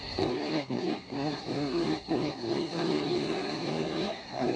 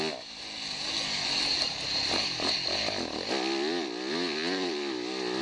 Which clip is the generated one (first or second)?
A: first